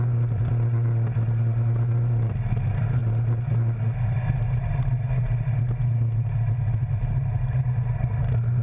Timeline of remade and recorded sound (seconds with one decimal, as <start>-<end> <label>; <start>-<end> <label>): 0.0-8.6 recorded